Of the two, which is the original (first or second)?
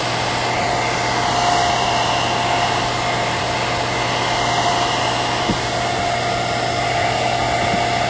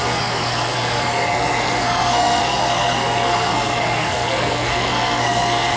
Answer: first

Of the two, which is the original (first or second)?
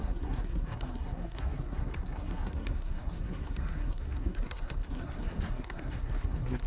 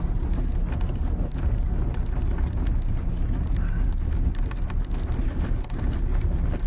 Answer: second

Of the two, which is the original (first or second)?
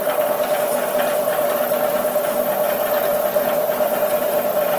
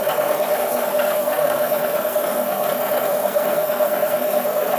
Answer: first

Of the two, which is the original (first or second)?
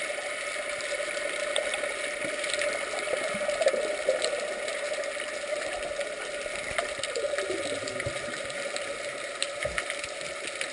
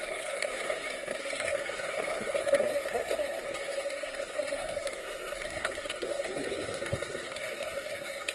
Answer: first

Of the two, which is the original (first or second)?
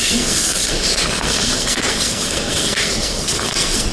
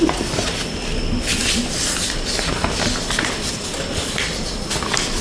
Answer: second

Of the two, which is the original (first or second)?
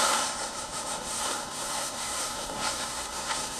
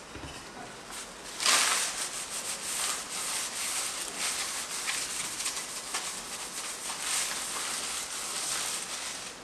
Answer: second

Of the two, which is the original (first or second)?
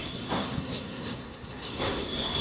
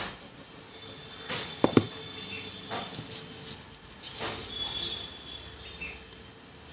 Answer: second